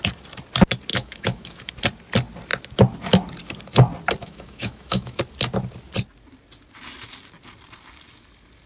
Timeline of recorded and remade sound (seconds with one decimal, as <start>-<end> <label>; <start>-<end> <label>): 0.0-0.9 recorded; 0.9-1.7 remade; 1.7-4.2 recorded; 4.2-5.2 remade; 5.2-8.7 recorded